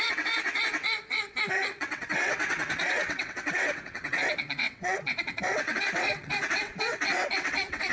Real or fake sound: fake